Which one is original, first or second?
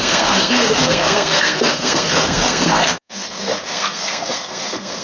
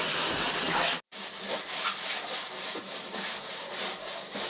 second